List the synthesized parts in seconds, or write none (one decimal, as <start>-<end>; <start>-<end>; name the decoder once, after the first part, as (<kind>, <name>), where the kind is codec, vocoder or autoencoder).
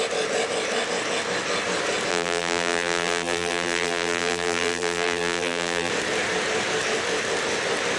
2.1-5.9 (vocoder, BigVGAN v2)